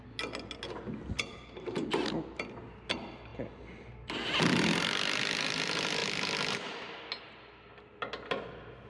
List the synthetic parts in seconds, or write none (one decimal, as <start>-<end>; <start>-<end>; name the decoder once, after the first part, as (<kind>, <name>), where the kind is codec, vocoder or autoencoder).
none